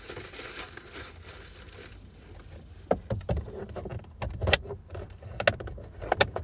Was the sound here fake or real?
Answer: real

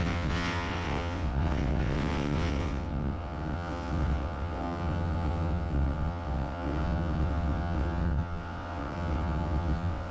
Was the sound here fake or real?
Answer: fake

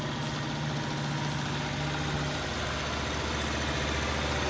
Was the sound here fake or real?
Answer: real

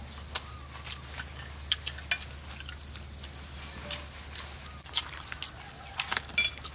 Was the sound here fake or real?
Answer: real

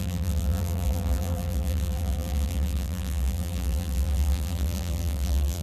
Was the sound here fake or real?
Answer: fake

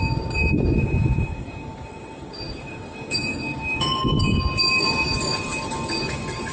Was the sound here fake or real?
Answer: fake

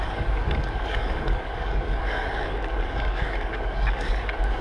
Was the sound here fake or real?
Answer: fake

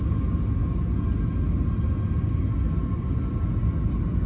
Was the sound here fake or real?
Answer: real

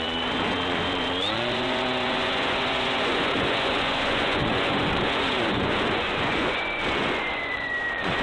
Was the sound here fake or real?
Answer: fake